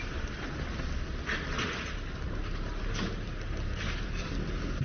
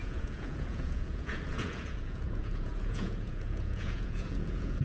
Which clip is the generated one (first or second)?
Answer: second